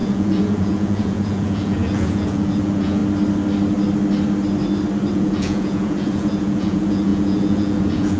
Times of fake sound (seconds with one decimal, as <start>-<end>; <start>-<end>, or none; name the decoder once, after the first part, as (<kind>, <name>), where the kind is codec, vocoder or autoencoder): 0.0-3.0 (vocoder, Vocos); 5.1-8.2